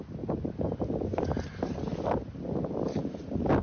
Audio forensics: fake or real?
real